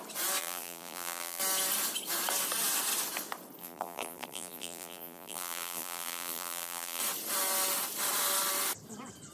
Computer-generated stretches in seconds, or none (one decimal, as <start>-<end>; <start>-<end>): 0.4-1.4; 3.6-7.0